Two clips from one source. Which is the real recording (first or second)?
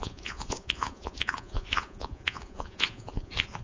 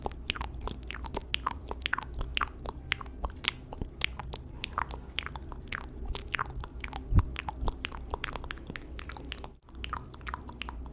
second